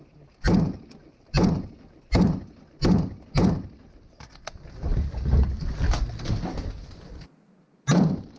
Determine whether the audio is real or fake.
real